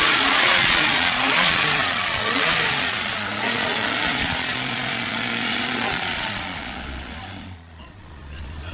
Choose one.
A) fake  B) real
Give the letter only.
A